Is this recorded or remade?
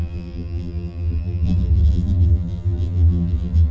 remade